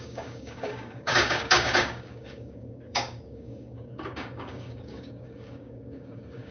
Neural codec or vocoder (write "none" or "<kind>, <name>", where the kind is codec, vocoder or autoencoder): codec, DAC